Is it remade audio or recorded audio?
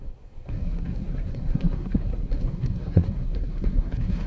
remade